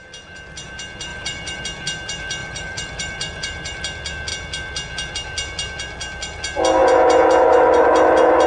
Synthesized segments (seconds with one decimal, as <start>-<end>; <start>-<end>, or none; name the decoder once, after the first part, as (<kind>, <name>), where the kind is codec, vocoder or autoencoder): 1.1-1.6 (vocoder, BigVGAN v2); 2.4-3.8